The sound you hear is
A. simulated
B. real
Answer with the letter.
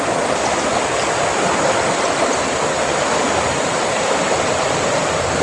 B